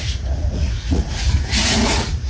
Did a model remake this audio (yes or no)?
yes